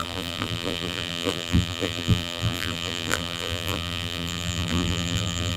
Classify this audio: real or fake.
fake